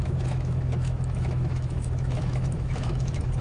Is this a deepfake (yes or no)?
yes